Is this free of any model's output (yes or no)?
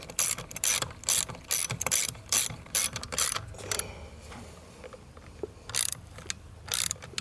yes